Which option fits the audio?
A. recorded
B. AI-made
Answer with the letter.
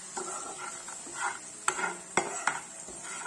A